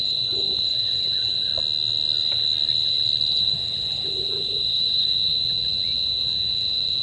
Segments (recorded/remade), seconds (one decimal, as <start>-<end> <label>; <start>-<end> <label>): 0.0-1.5 remade; 1.5-3.4 recorded; 3.4-7.0 remade

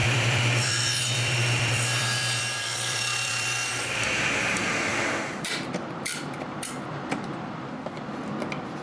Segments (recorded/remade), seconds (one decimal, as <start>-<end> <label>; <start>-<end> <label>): 0.0-4.0 remade; 4.0-4.9 recorded; 4.9-8.3 remade; 8.3-8.8 recorded

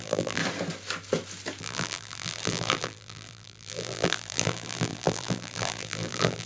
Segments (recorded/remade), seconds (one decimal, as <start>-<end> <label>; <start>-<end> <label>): 0.0-0.4 remade; 0.4-1.6 recorded; 1.6-6.5 remade

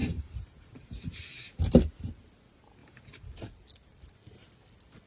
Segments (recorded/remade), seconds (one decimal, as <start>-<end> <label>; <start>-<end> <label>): 0.0-1.6 remade; 1.6-2.8 recorded; 2.8-4.1 remade; 4.1-5.1 recorded

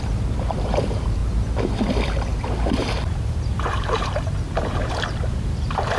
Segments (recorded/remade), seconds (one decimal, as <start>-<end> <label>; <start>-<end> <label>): 0.0-1.2 remade; 1.2-2.7 recorded; 2.7-6.0 remade

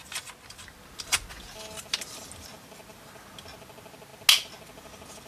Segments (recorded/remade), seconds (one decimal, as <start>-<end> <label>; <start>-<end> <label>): 0.0-5.3 recorded